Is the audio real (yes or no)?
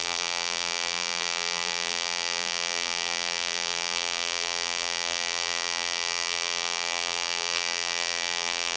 no